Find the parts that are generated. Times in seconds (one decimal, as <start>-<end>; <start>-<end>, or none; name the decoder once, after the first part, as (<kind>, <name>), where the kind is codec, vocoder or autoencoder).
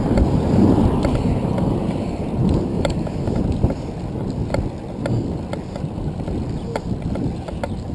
2.7-3.4 (autoencoder, DAC-VAE)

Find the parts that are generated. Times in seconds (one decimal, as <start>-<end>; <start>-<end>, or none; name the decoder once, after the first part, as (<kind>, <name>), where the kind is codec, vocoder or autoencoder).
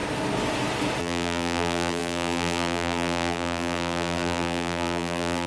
1.0-5.5 (vocoder, BigVGAN v2)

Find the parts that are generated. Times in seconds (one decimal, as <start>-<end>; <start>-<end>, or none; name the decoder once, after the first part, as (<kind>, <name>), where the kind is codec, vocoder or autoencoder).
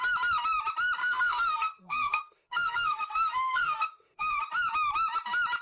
1.0-4.4 (codec, SNAC)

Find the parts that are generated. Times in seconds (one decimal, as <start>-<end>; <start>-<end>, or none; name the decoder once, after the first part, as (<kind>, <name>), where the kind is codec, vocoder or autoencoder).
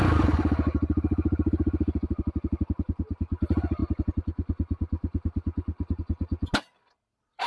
none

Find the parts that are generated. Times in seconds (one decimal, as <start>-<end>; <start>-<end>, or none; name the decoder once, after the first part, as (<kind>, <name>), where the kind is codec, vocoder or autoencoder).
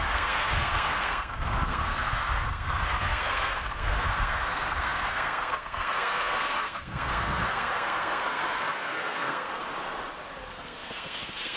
0.0-9.6 (codec, SNAC); 10.4-11.6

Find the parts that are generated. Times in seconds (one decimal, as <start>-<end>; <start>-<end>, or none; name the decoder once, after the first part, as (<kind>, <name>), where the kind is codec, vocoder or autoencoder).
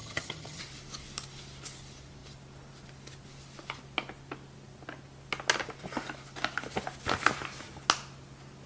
0.0-0.6 (vocoder, HiFi-GAN)